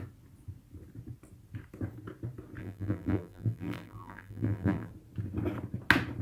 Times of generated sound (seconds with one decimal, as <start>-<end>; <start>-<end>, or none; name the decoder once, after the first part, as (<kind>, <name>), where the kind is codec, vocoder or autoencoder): 2.6-4.9 (vocoder, BigVGAN v2)